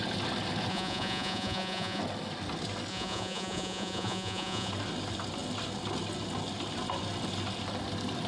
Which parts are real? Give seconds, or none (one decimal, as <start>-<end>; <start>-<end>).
0.0-0.7; 2.0-2.9; 4.7-8.3